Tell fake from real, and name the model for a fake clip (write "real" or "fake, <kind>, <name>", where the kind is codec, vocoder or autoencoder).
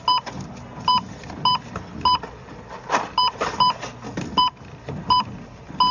real